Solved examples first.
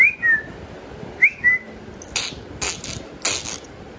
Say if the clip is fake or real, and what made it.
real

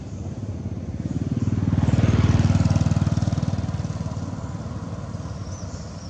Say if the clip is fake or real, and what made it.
real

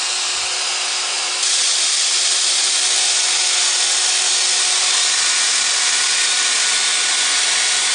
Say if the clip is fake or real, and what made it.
real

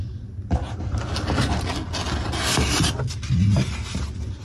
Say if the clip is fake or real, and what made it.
real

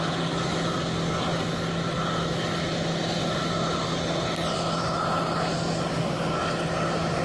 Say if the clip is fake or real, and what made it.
real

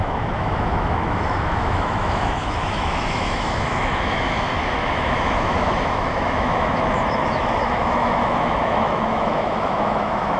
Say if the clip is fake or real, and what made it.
fake, autoencoder, DAC-VAE